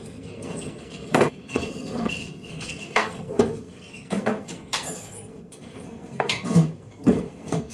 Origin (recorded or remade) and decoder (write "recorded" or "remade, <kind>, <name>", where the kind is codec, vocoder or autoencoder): remade, codec, SNAC